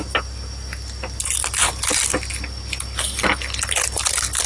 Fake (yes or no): no